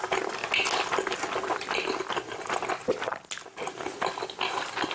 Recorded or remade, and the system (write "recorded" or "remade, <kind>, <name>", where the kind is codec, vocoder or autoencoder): recorded